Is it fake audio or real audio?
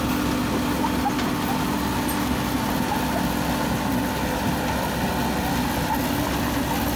real